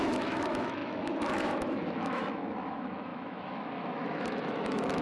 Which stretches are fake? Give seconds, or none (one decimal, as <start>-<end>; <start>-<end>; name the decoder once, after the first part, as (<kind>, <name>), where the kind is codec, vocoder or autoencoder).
0.0-5.0 (autoencoder, DAC-VAE)